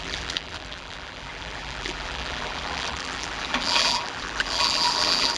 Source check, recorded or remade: remade